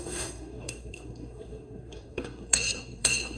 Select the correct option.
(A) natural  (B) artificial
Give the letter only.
B